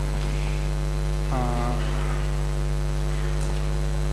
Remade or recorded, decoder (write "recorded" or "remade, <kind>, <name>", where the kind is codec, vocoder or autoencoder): recorded